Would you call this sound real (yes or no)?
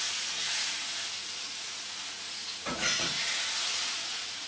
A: no